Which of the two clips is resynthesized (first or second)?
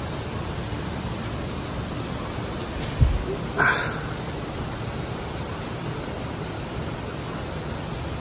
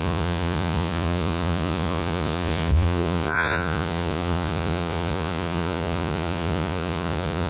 second